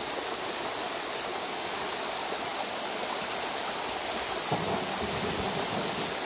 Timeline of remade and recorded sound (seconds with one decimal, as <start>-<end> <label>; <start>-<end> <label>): 0.0-1.3 recorded; 1.3-1.8 remade; 1.8-6.3 recorded